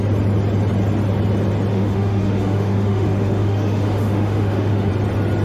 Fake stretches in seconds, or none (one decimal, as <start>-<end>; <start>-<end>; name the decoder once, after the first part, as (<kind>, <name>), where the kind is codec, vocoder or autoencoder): 1.7-4.9 (autoencoder, DAC-VAE)